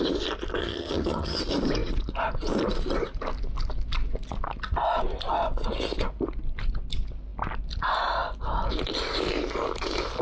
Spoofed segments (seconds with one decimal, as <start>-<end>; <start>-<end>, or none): 0.6-1.4